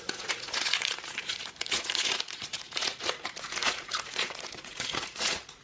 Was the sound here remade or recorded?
remade